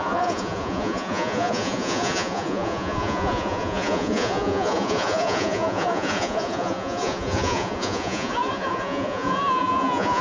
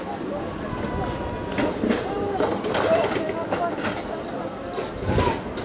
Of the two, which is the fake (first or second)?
first